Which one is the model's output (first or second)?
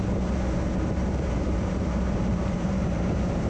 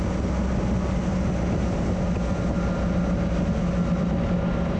first